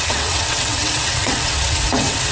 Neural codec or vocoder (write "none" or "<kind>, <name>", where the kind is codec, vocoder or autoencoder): vocoder, WaveNeXt